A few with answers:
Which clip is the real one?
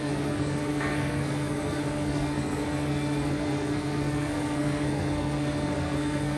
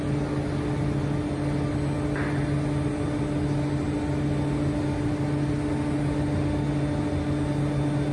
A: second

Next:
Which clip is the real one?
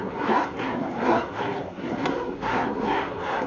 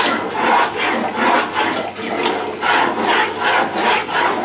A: second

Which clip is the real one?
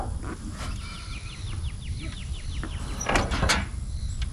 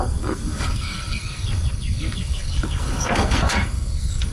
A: first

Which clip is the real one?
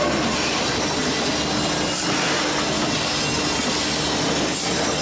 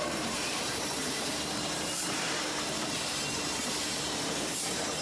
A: first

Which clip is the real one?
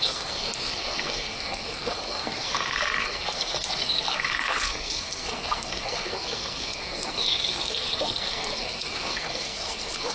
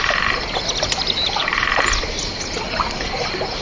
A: second